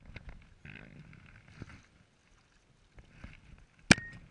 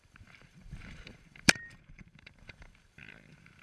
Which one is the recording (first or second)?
first